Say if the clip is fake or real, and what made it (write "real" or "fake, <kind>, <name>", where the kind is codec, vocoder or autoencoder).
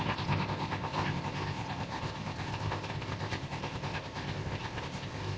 fake, codec, ZipCodec